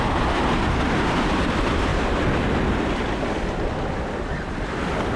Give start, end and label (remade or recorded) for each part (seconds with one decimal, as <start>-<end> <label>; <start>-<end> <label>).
0.0-5.2 recorded